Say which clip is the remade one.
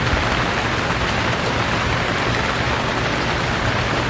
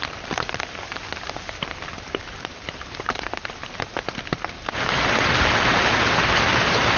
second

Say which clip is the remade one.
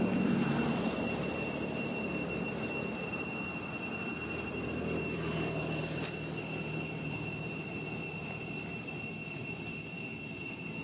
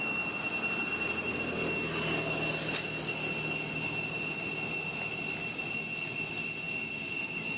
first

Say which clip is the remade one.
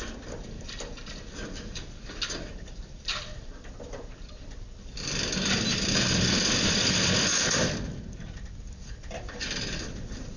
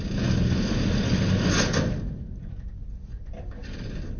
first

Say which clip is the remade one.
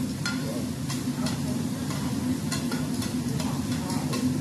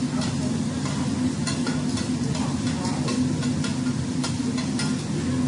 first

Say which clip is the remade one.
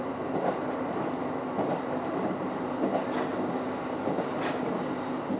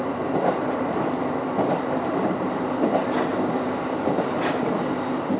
second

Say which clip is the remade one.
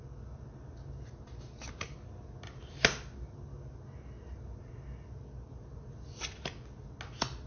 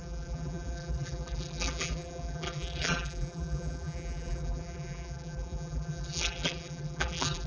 second